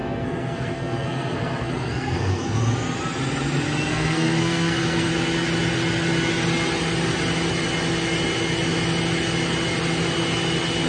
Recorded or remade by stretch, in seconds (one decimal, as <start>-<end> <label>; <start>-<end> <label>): 0.0-2.6 remade; 2.6-3.9 recorded; 3.9-5.1 remade; 5.1-10.9 recorded